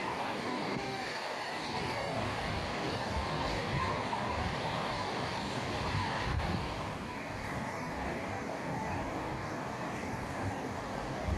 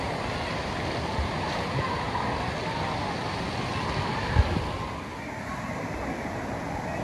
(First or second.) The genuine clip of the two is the second